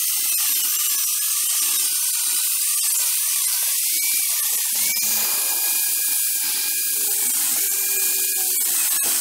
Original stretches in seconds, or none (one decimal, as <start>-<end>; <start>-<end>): 7.7-9.2